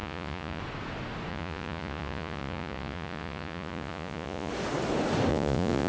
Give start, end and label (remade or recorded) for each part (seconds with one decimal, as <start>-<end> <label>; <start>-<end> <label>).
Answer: 0.0-0.6 remade; 0.6-1.3 recorded; 1.3-4.5 remade; 4.5-5.3 recorded; 5.3-5.9 remade

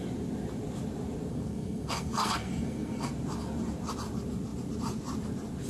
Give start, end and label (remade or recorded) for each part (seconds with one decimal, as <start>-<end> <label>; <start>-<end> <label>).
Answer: 0.0-1.3 recorded; 1.3-3.1 remade; 3.1-5.7 recorded

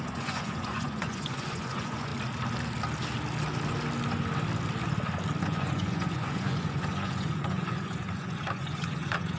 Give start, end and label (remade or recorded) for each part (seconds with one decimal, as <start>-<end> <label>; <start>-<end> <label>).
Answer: 0.0-2.1 remade; 2.1-5.4 recorded; 5.4-9.4 remade